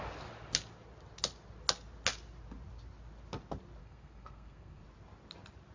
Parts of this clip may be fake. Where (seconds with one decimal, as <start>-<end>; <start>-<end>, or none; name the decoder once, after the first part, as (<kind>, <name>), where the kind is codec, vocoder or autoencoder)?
3.8-4.8 (codec, SNAC)